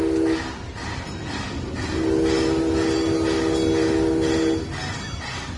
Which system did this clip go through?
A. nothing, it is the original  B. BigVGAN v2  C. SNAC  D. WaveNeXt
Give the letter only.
A